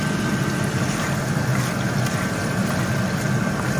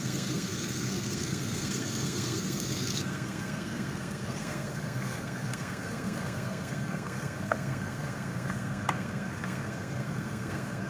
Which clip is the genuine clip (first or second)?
first